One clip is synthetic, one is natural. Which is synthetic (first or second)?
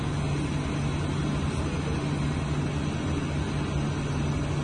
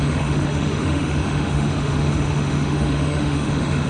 second